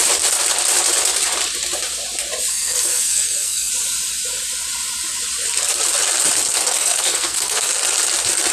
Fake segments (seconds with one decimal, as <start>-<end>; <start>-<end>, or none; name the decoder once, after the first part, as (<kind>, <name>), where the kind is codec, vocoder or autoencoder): 2.5-3.7 (codec, SNAC); 6.6-7.7